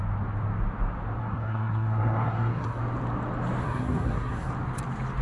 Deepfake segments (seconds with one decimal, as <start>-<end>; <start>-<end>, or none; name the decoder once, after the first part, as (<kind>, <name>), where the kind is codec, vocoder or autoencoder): 1.2-2.8 (codec, SNAC); 3.6-4.5